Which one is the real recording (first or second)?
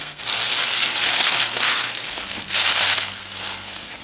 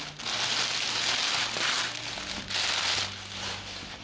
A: second